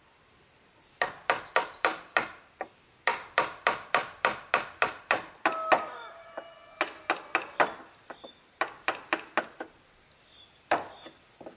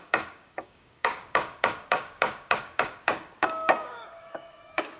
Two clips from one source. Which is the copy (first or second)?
second